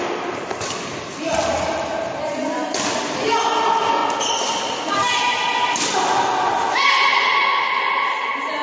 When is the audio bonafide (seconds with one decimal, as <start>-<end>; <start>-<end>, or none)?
0.0-8.6